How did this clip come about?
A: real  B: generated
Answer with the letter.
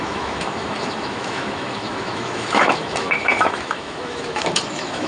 B